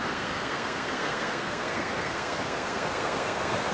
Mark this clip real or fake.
fake